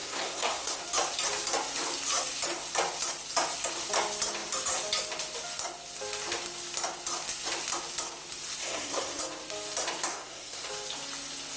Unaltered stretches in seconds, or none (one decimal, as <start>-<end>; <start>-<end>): 0.8-8.6; 9.2-10.1; 10.7-11.6